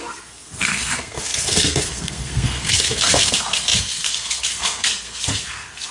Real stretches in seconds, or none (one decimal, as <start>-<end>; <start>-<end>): none